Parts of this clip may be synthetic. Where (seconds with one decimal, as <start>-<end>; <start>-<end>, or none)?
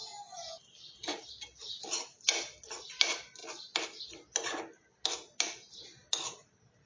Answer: none